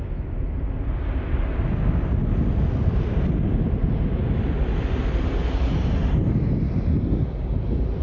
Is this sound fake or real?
real